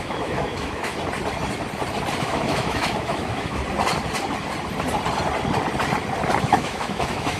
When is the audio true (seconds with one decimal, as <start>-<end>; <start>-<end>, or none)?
0.9-2.2; 3.6-6.4

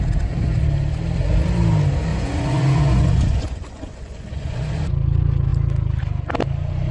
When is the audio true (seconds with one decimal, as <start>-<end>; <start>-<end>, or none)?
0.0-2.1; 4.9-6.9